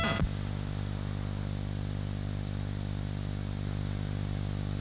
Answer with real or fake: real